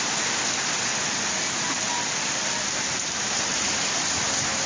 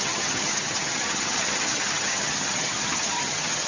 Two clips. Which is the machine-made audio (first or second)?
second